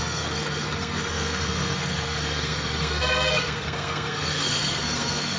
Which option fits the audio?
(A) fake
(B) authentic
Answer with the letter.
A